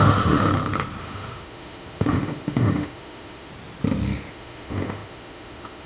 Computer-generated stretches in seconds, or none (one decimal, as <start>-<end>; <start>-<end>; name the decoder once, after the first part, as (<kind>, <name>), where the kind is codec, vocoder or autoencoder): 0.0-0.5 (autoencoder, DAC-VAE); 1.0-3.5; 4.3-5.9